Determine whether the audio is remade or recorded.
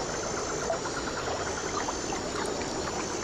recorded